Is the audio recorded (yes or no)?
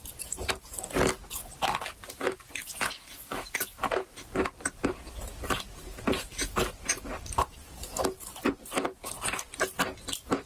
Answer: yes